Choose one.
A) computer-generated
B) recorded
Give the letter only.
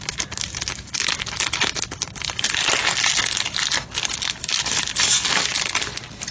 B